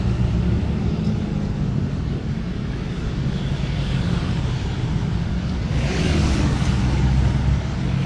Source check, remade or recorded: remade